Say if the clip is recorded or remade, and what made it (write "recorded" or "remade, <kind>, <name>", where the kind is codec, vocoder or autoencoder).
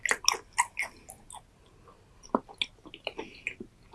recorded